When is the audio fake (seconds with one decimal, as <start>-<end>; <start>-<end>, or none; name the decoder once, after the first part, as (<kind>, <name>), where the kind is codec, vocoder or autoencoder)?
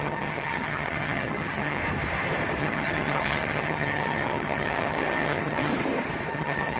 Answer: 0.0-1.8 (vocoder, HiFi-GAN); 2.6-5.7; 6.3-6.8